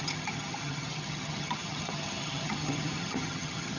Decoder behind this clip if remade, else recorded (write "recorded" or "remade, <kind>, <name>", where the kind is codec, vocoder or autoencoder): remade, vocoder, HiFi-GAN